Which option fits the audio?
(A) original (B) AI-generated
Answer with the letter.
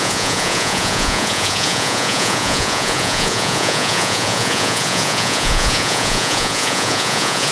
B